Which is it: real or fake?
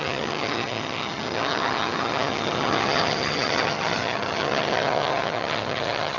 fake